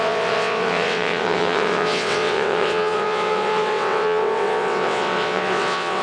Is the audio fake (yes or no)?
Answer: yes